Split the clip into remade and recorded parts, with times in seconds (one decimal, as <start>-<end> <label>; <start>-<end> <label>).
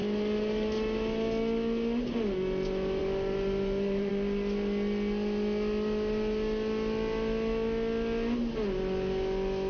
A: 0.0-3.0 recorded; 3.0-4.1 remade; 4.1-9.7 recorded